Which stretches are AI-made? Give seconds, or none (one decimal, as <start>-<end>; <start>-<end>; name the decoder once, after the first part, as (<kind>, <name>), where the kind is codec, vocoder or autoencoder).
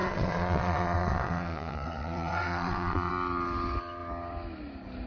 0.0-3.1 (vocoder, WaveNeXt)